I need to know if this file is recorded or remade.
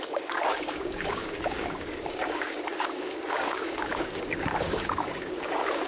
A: remade